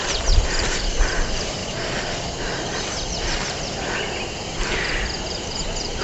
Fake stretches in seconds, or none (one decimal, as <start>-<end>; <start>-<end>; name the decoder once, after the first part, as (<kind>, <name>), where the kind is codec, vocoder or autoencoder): 0.0-1.6 (vocoder, BigVGAN v2); 5.2-6.0

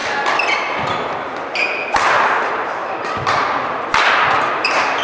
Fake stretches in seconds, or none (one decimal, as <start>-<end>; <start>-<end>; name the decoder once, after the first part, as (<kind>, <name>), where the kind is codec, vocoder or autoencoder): 2.4-2.8 (vocoder, BigVGAN v2); 4.4-5.0

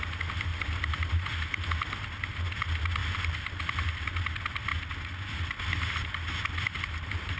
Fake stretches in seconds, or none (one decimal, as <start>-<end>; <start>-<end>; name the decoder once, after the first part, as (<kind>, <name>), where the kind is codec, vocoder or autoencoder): 0.5-1.1 (vocoder, BigVGAN v2); 3.0-4.1